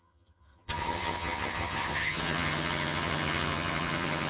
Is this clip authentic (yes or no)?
no